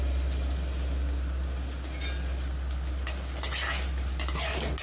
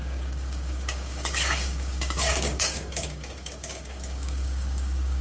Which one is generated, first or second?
second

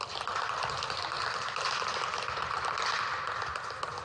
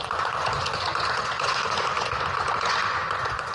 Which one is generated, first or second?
second